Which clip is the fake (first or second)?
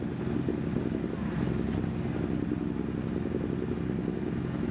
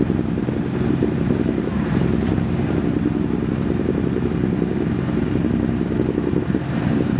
second